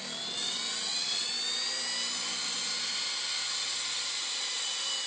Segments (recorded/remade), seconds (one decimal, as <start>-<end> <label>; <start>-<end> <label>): 0.0-0.4 recorded; 0.4-1.3 remade; 1.3-5.1 recorded